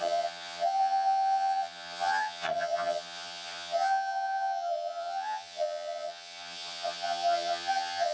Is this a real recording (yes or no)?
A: no